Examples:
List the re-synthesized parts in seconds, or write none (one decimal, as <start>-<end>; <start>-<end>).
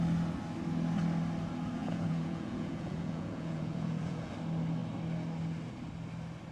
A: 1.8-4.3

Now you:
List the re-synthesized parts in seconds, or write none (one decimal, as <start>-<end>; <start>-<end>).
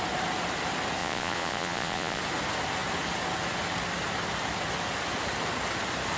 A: 1.0-2.2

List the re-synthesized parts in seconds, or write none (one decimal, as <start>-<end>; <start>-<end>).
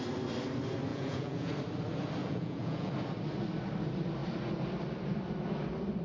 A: 0.9-1.5; 2.2-2.9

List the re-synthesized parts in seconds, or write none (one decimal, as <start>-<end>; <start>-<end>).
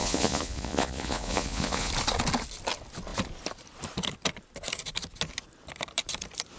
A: 0.0-1.9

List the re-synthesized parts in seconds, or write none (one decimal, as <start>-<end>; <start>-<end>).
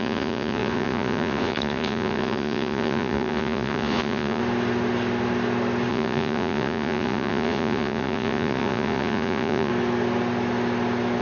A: 0.0-4.4; 5.9-9.7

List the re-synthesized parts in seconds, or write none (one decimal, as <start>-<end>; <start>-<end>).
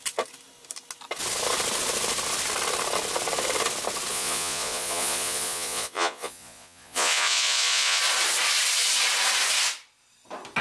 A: 4.1-8.0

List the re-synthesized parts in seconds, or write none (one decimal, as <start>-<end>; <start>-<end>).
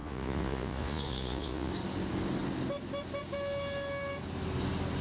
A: 0.0-1.7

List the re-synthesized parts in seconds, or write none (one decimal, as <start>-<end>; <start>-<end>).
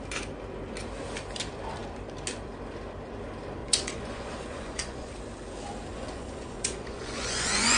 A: 3.6-5.1; 5.9-7.8